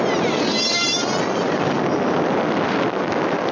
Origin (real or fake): real